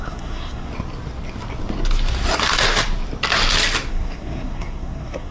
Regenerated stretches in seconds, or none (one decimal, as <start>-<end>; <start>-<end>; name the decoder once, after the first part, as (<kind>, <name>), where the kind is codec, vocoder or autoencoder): 0.0-0.7 (codec, SNAC); 3.9-5.3